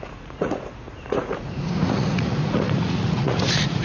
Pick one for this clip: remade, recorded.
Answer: remade